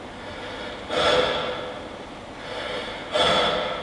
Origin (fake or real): real